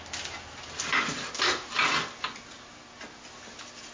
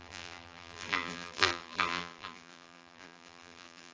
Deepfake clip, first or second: second